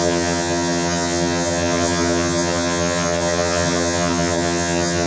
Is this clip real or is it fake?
fake